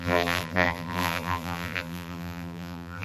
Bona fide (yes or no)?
no